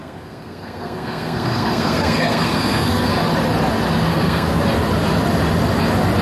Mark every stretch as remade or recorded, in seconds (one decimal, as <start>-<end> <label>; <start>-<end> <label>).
0.0-3.1 remade; 3.1-4.1 recorded; 4.1-4.6 remade; 4.6-6.2 recorded